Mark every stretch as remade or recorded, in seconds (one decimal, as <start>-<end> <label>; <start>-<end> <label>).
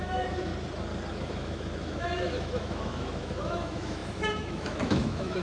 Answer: 0.0-0.5 remade; 0.5-1.1 recorded; 1.1-5.4 remade